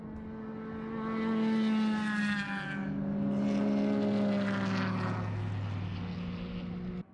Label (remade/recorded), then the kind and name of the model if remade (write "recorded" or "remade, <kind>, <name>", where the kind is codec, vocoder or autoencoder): recorded